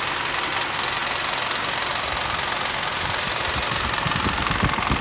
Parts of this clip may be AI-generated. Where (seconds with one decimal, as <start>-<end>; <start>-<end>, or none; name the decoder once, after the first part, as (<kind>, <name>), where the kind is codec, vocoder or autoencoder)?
2.9-4.2 (vocoder, BigVGAN v2)